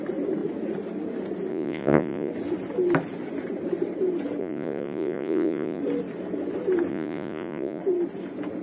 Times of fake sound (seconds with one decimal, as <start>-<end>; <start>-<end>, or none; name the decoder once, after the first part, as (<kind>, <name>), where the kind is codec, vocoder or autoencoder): 1.5-2.3 (vocoder, Vocos); 4.4-5.8; 6.9-7.8